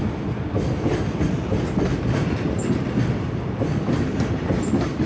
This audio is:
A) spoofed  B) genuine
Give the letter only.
B